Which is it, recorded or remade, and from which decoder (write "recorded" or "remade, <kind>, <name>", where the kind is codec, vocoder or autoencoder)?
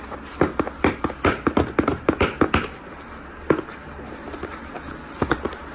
recorded